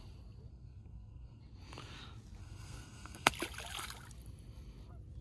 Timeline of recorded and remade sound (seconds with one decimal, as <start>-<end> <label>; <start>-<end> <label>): 0.0-0.5 recorded; 0.5-1.4 remade; 1.4-2.4 recorded; 2.4-3.3 remade; 3.3-5.2 recorded